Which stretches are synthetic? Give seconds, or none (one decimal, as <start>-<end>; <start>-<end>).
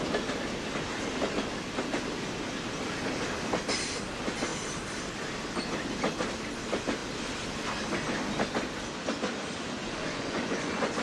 9.8-11.0